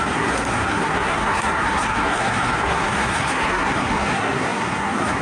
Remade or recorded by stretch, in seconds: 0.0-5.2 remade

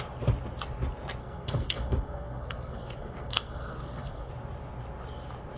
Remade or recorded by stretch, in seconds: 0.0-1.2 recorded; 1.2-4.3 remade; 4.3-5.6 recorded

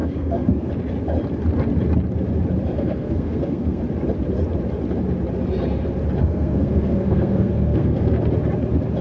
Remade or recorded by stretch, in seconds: 0.0-0.7 remade; 0.7-2.6 recorded; 2.6-3.8 remade; 3.8-6.2 recorded; 6.2-8.2 remade; 8.2-9.0 recorded

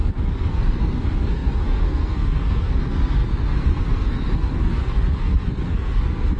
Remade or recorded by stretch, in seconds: 0.0-6.4 remade